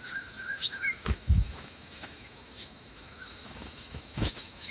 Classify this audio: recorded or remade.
remade